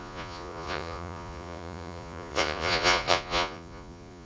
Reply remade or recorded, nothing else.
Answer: remade